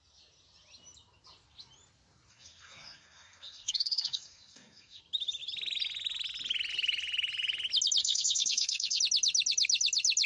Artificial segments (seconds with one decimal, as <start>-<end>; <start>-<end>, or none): 2.3-5.0; 8.0-9.0